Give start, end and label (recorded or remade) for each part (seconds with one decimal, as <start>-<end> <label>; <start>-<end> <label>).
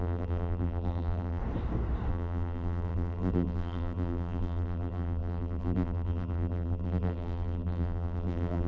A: 0.0-1.4 remade; 1.4-2.1 recorded; 2.1-8.7 remade